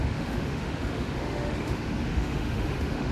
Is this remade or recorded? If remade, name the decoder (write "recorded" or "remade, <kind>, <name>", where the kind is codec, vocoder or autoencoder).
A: remade, autoencoder, DAC-VAE